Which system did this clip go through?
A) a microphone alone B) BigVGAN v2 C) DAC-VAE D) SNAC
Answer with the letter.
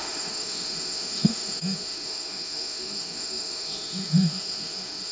C